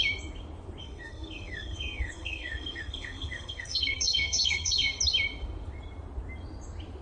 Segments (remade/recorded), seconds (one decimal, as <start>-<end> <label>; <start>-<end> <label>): 0.0-0.8 recorded; 0.8-5.0 remade; 5.0-7.0 recorded